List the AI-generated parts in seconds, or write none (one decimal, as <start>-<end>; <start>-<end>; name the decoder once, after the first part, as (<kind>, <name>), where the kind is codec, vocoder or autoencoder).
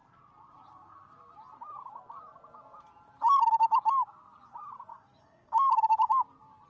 4.9-6.1 (codec, DAC)